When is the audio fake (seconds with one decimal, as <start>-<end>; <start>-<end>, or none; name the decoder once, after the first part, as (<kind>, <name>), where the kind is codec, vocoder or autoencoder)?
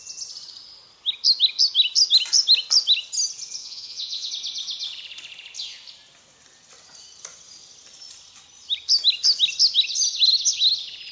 3.6-4.3 (vocoder, Vocos)